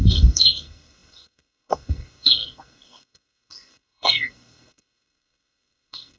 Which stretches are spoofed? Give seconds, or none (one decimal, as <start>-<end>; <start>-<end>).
0.0-6.2